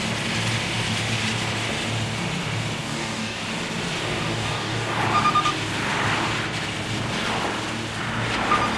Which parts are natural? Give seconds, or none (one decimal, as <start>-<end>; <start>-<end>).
0.0-2.8; 3.4-4.0; 5.0-8.8